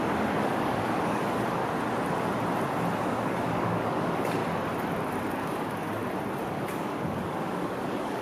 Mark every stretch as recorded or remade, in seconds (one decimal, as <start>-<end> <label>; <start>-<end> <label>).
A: 0.0-1.6 remade; 1.6-3.0 recorded; 3.0-4.4 remade; 4.4-5.3 recorded; 5.3-6.0 remade; 6.0-6.5 recorded; 6.5-8.2 remade